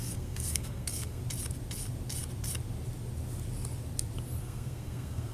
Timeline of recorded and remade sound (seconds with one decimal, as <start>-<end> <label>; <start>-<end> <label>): 0.0-1.2 remade; 1.2-4.4 recorded; 4.4-5.3 remade